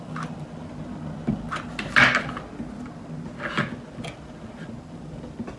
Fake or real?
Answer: real